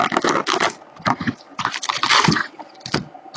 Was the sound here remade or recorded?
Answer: recorded